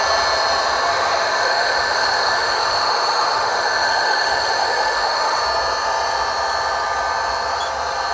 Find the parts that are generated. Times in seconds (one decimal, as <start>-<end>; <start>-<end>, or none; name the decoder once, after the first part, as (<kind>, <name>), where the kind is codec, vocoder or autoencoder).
0.9-5.4 (autoencoder, DAC-VAE)